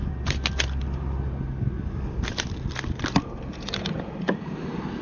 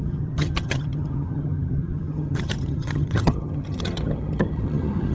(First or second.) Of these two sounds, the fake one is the second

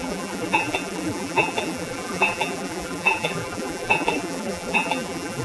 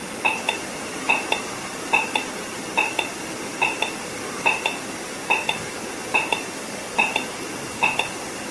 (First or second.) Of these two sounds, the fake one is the first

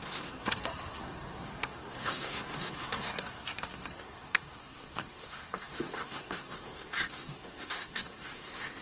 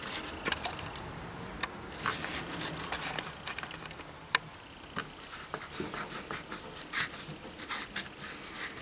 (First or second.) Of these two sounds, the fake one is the first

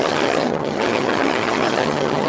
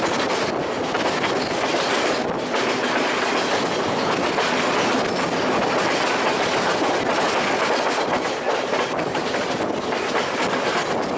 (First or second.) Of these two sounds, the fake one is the first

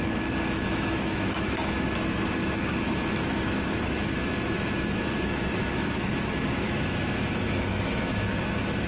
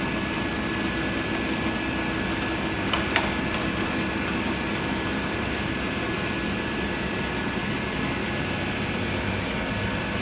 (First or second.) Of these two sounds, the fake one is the first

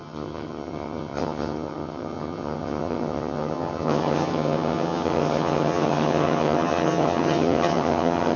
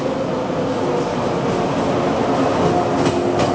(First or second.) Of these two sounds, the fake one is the first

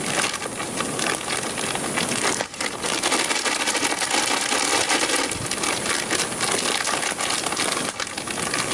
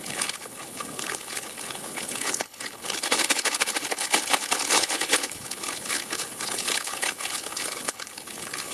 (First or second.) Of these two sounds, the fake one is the second